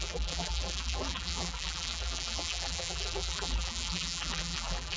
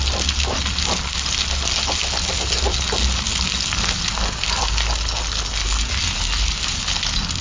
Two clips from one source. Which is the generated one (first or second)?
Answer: first